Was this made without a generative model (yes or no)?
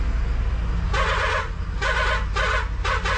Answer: yes